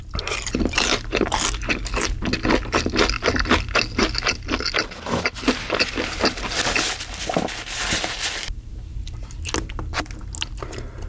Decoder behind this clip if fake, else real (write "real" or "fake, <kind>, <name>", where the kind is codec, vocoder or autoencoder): real